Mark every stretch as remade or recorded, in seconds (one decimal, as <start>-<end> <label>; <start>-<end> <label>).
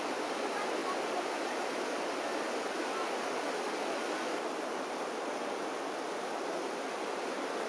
0.0-7.7 recorded